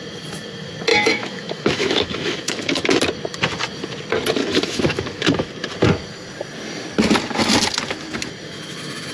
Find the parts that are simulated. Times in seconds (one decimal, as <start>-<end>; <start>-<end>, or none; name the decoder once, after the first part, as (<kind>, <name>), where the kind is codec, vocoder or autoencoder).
0.9-2.9 (autoencoder, DAC-VAE); 4.4-5.5